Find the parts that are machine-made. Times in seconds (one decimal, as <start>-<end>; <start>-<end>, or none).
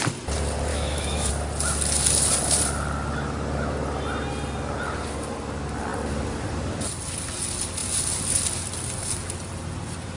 0.7-1.3